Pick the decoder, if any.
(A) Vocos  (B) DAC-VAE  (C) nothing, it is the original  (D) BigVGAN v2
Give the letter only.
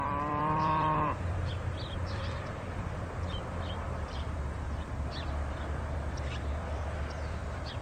D